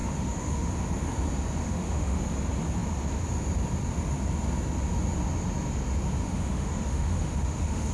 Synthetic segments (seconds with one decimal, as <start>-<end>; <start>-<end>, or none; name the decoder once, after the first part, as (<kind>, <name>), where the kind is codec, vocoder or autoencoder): 0.0-0.7 (autoencoder, DAC-VAE); 1.6-2.2; 6.2-7.9